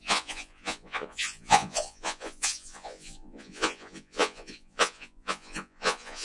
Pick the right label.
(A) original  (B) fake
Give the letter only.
B